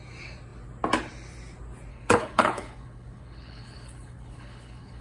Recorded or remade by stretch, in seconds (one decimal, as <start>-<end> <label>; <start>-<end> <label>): 0.0-1.9 recorded; 1.9-5.0 remade